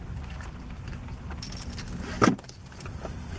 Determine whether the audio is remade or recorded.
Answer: remade